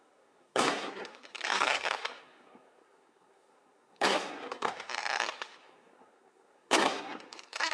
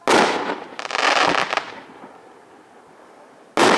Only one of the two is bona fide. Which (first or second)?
second